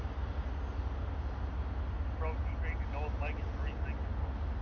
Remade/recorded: recorded